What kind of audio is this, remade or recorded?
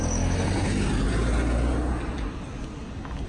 recorded